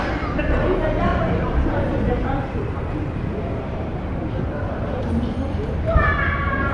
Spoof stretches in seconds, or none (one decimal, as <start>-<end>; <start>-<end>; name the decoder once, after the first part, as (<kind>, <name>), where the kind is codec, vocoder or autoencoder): 1.1-5.1 (vocoder, BigVGAN v2)